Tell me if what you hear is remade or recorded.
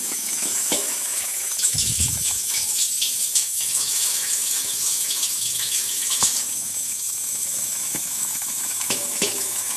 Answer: remade